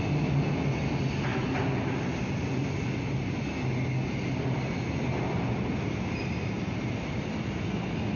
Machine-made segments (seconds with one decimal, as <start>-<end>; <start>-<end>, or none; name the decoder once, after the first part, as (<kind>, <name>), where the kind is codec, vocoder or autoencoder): none